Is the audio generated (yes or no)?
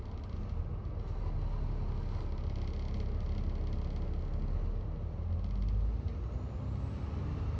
no